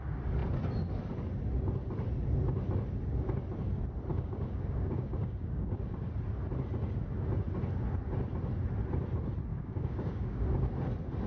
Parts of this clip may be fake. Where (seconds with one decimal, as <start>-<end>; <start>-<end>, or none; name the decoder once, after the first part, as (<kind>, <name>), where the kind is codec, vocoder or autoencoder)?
4.1-6.1 (codec, DAC); 9.5-10.4